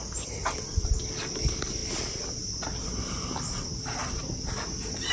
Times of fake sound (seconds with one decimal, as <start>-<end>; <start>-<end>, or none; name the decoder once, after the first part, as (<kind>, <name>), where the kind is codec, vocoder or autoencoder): 0.0-1.0 (vocoder, BigVGAN v2)